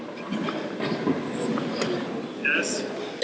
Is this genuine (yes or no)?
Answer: yes